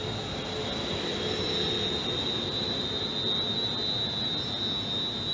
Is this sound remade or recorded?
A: recorded